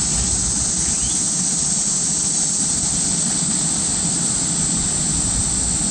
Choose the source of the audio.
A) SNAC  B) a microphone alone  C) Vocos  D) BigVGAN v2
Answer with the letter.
B